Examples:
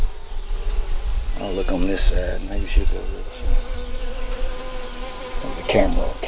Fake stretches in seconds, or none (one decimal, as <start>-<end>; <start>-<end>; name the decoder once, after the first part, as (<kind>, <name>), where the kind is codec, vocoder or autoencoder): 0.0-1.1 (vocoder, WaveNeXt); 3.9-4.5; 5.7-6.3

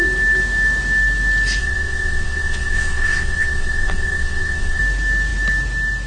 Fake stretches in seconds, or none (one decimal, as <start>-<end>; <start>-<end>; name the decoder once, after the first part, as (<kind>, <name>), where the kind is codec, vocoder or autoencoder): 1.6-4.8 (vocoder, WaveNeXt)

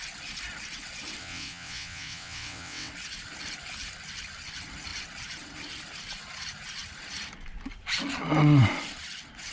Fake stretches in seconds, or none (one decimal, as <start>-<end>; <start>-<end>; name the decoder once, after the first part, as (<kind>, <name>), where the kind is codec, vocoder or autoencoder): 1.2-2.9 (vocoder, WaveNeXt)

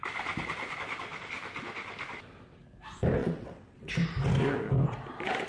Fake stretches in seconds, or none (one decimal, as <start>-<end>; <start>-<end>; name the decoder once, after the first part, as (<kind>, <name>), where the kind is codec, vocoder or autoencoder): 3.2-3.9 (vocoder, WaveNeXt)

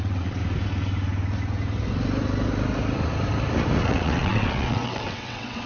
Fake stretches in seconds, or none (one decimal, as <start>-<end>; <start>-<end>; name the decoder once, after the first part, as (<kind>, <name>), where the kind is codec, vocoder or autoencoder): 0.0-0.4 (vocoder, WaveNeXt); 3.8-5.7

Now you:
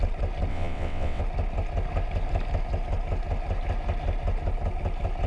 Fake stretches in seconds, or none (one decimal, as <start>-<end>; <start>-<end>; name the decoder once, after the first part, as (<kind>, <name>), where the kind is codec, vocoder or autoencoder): 0.5-1.2 (vocoder, WaveNeXt)

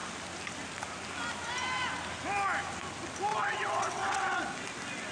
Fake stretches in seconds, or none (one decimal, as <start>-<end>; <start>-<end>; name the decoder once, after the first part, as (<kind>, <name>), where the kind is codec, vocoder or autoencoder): 3.3-4.4 (vocoder, WaveNeXt)